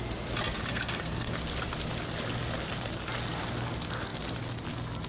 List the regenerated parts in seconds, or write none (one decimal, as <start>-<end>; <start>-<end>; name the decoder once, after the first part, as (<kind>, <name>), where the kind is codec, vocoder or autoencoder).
0.7-1.3 (codec, SNAC)